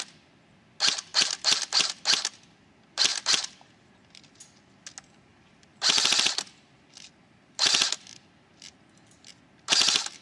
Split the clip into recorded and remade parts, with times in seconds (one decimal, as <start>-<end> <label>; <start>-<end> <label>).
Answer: 0.0-1.1 recorded; 1.1-1.9 remade; 1.9-5.3 recorded; 5.3-8.7 remade; 8.7-10.2 recorded